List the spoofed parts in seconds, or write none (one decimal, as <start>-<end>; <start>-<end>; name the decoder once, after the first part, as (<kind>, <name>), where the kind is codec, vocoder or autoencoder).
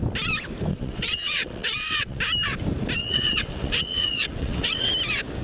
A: 0.7-2.2 (vocoder, WaveNeXt); 3.0-4.9